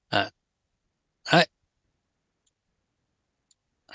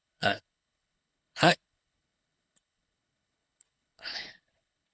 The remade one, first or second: second